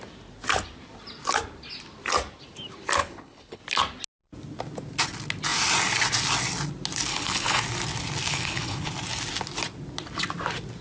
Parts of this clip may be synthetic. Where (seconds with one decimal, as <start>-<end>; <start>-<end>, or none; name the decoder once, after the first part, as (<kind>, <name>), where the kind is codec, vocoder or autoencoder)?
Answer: 3.0-3.6 (codec, HILCodec); 7.1-7.6; 8.3-8.9